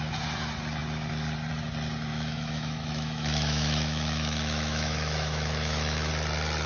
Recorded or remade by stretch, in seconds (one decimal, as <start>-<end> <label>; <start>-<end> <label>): 0.0-2.1 recorded; 2.1-6.1 remade; 6.1-6.7 recorded